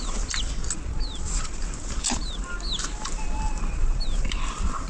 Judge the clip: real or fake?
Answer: real